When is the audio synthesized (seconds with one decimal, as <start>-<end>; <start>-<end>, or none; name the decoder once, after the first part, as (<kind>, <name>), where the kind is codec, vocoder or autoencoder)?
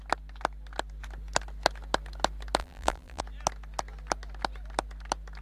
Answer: 2.6-3.2 (vocoder, BigVGAN v2)